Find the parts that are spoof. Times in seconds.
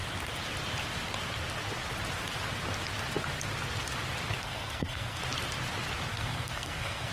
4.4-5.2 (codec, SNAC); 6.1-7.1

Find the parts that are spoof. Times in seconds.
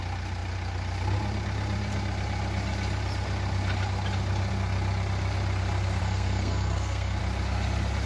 6.0-7.2 (codec, SNAC)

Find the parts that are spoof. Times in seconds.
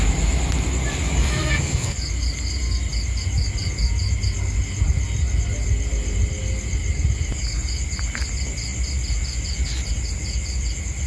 1.2-2.0 (codec, SNAC)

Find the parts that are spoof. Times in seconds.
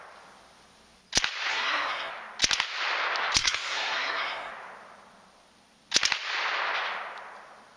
1.5-2.1 (codec, SNAC); 3.4-4.5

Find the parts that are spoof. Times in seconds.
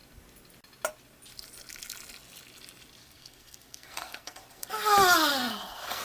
3.0-4.7 (codec, SNAC); 5.3-6.0